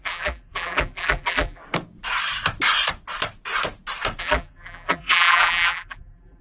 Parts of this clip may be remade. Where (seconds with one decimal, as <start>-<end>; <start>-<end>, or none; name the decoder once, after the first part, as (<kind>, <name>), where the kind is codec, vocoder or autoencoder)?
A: 0.0-1.6 (vocoder, BigVGAN v2); 4.2-6.4